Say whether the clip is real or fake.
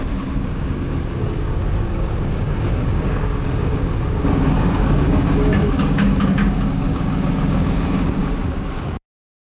fake